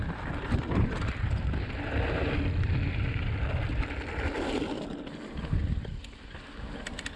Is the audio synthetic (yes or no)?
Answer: no